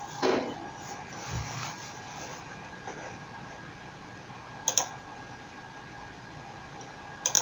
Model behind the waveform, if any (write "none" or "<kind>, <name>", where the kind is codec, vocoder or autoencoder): none